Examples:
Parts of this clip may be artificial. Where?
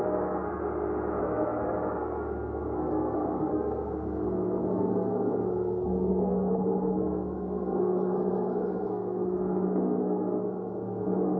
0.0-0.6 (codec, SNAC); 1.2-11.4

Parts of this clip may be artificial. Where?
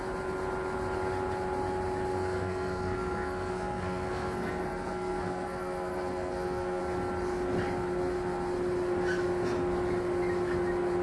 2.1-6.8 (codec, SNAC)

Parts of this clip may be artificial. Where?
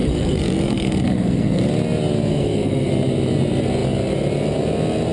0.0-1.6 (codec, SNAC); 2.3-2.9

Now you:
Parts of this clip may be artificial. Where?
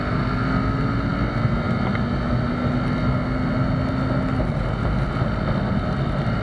none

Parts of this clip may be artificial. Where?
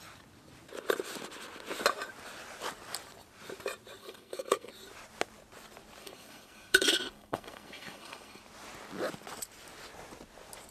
4.0-4.7 (codec, SNAC); 6.0-8.4